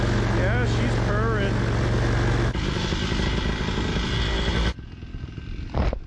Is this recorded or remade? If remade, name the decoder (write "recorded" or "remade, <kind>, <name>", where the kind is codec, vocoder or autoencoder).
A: recorded